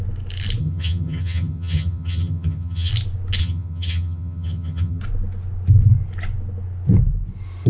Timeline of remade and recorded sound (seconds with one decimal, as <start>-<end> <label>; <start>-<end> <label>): 0.0-0.6 recorded; 0.6-2.9 remade; 2.9-3.4 recorded; 3.4-5.0 remade; 5.0-7.7 recorded